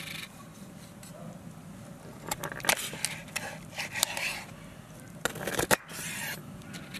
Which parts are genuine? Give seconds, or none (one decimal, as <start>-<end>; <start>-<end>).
0.0-7.0